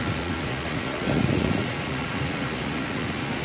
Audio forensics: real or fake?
fake